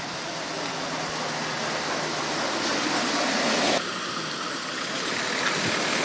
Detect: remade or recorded recorded